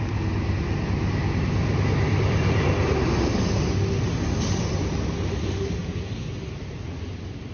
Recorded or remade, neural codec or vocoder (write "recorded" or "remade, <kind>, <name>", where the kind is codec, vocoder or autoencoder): recorded